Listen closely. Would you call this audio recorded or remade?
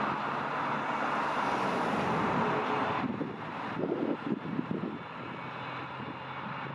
recorded